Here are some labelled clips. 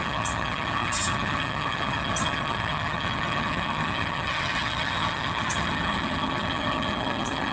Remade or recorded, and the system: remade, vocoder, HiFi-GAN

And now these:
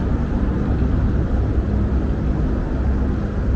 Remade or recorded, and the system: recorded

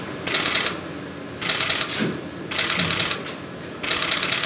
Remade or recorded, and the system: recorded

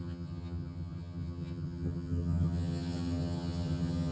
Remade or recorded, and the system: remade, vocoder, HiFi-GAN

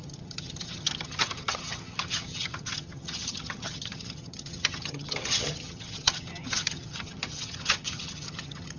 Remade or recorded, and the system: remade, vocoder, HiFi-GAN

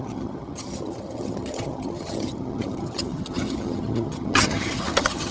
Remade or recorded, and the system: remade, vocoder, HiFi-GAN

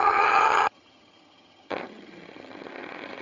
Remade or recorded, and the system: remade, vocoder, HiFi-GAN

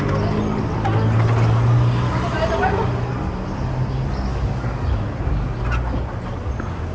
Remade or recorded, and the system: recorded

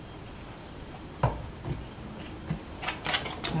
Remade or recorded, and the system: recorded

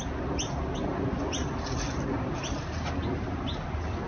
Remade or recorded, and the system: recorded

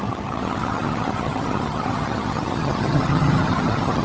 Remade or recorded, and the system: remade, vocoder, HiFi-GAN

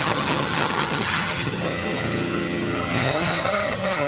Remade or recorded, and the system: remade, vocoder, HiFi-GAN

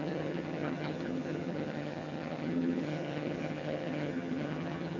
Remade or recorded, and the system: remade, vocoder, HiFi-GAN